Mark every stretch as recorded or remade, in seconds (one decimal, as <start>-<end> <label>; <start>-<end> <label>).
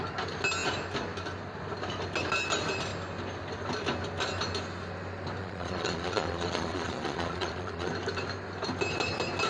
0.0-5.4 recorded; 5.4-7.9 remade; 7.9-9.5 recorded